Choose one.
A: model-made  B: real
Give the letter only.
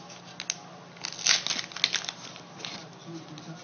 B